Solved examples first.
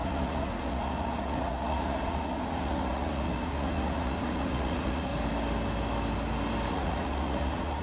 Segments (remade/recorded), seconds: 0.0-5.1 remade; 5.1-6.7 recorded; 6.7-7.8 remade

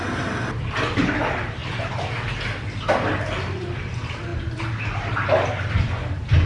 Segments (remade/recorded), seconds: 0.0-6.5 recorded

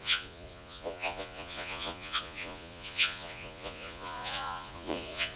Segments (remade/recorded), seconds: 0.0-5.4 remade

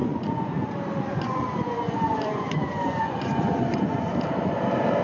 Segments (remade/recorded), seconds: 0.0-0.7 remade; 0.7-1.1 recorded; 1.1-4.1 remade; 4.1-5.0 recorded

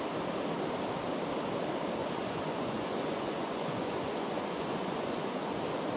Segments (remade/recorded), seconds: 0.0-2.0 recorded; 2.0-5.5 remade; 5.5-6.0 recorded

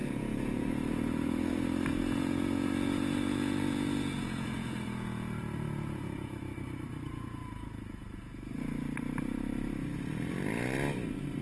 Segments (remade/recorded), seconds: 0.0-0.7 remade; 0.7-1.9 recorded; 1.9-6.3 remade; 6.3-7.1 recorded; 7.1-8.6 remade; 8.6-11.4 recorded

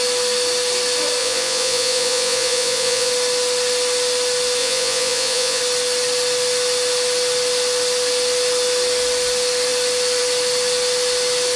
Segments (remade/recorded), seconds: 0.0-1.2 recorded; 1.2-3.1 remade; 3.1-4.6 recorded; 4.6-5.6 remade; 5.6-11.6 recorded

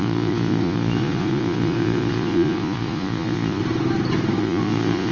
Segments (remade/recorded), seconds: 0.0-3.6 remade; 3.6-4.4 recorded; 4.4-5.1 remade